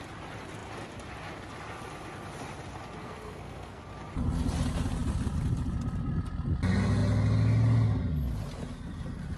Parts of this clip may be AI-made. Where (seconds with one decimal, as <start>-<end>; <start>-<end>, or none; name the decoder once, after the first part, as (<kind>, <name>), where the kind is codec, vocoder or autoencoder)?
3.0-3.8 (codec, SNAC)